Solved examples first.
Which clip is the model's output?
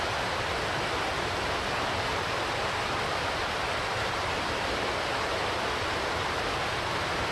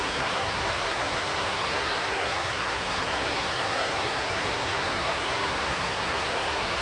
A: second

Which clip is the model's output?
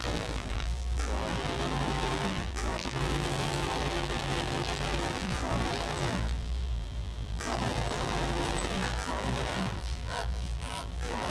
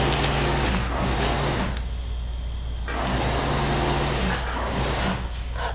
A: first